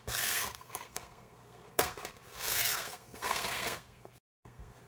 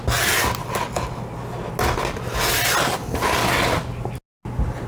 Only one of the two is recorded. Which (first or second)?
second